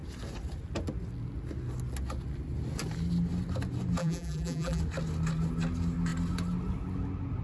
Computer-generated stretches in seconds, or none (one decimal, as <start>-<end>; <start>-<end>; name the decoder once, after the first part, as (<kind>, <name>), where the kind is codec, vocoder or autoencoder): 4.0-4.8 (vocoder, BigVGAN v2)